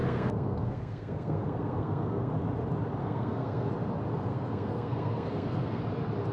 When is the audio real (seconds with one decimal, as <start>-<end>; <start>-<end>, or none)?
2.3-3.0; 3.7-4.3; 5.8-6.3